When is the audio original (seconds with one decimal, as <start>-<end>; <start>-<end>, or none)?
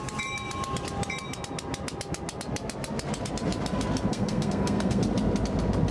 0.0-4.1; 5.0-5.9